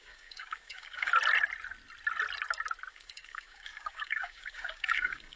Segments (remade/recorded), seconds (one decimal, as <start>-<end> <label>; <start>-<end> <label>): 0.0-1.1 remade; 1.1-2.9 recorded; 2.9-5.4 remade